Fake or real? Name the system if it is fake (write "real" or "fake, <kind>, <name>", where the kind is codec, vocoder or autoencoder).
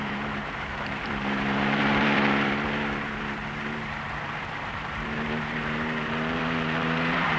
fake, vocoder, BigVGAN v2